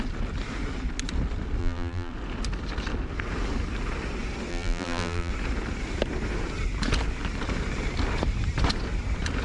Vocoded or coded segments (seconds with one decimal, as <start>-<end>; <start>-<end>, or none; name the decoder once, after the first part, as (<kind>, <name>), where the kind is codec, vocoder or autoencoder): 1.6-2.1 (vocoder, BigVGAN v2); 4.5-5.3